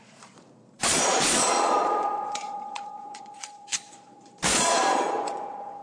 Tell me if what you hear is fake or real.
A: fake